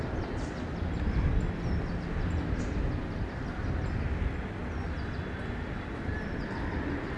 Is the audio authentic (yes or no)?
yes